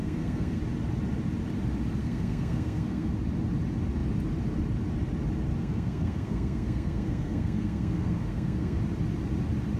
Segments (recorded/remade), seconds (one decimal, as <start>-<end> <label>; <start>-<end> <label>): 0.0-0.6 remade; 0.6-2.0 recorded; 2.0-3.1 remade; 3.1-5.6 recorded; 5.6-8.8 remade; 8.8-9.8 recorded